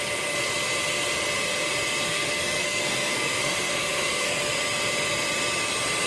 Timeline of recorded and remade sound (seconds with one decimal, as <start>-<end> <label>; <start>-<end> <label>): 0.0-2.1 recorded; 2.1-4.5 remade; 4.5-6.1 recorded

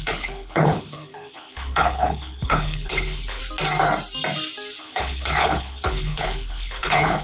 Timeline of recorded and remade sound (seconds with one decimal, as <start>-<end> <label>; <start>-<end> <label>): 0.0-3.4 remade; 3.4-4.8 recorded; 4.8-7.2 remade